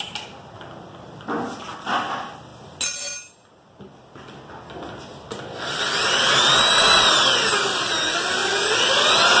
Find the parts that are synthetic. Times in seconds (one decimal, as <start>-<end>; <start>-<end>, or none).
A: none